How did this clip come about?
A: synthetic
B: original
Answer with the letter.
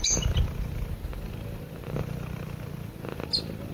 B